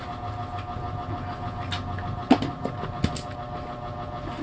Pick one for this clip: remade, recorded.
recorded